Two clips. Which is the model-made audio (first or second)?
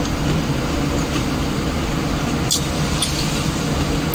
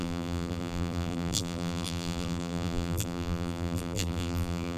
second